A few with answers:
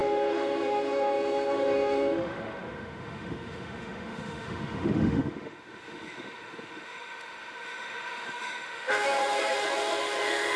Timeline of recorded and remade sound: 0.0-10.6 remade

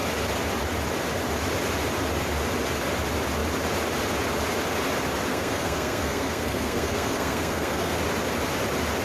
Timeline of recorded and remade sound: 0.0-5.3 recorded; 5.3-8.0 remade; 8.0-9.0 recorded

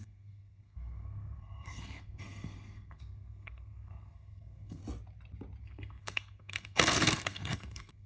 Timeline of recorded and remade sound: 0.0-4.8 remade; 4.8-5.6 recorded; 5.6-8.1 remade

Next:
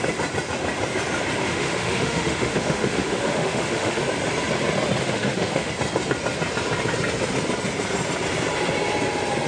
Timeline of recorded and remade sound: 0.0-1.4 recorded; 1.4-4.0 remade; 4.0-5.0 recorded; 5.0-5.7 remade; 5.7-9.5 recorded